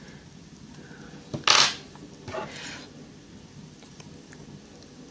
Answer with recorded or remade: recorded